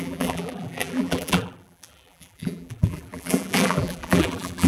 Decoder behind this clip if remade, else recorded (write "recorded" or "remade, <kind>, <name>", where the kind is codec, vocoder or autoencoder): remade, vocoder, BigVGAN v2